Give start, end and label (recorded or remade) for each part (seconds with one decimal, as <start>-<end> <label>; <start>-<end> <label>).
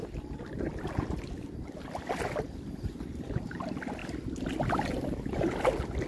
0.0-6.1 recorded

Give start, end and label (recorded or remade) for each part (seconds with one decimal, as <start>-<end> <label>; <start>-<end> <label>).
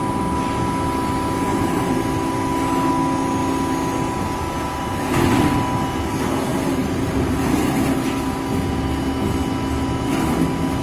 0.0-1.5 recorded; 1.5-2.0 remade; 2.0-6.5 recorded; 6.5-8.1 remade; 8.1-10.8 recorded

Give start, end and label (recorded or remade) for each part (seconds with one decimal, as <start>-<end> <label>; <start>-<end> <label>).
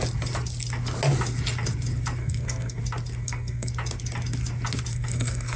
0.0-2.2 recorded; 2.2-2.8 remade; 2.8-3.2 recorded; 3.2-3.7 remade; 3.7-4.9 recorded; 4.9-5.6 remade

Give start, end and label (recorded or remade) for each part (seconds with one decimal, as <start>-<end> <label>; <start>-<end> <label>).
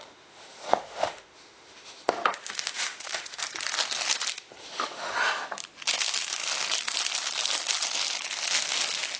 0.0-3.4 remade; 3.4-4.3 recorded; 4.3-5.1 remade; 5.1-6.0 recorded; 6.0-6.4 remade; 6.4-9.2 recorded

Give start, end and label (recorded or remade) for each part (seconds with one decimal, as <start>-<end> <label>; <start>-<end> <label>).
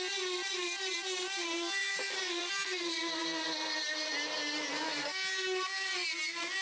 0.0-1.8 recorded; 1.8-2.5 remade; 2.5-6.6 recorded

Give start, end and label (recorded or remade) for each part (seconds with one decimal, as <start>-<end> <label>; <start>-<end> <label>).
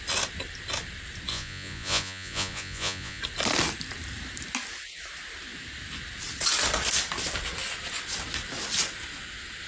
0.0-1.3 recorded; 1.3-3.2 remade; 3.2-9.7 recorded